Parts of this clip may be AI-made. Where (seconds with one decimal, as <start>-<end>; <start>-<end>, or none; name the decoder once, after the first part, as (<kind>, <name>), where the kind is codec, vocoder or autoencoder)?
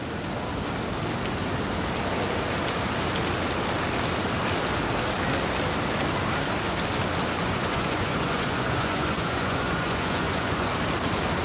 7.4-10.7 (vocoder, Vocos)